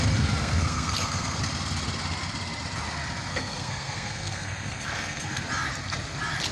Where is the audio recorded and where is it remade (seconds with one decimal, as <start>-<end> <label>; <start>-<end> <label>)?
0.0-0.4 recorded; 0.4-1.4 remade; 1.4-3.3 recorded; 3.3-5.4 remade; 5.4-6.5 recorded